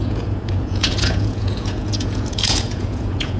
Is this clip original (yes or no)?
no